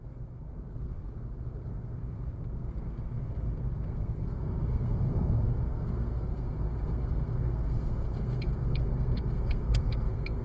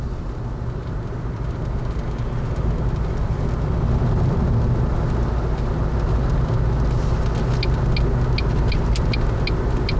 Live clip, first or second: second